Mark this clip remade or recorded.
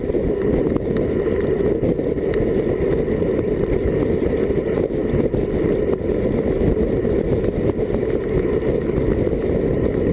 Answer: recorded